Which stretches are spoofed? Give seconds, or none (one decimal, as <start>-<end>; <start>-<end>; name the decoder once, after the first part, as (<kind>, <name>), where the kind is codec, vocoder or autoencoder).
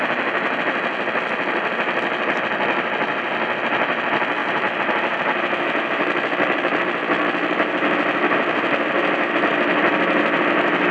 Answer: none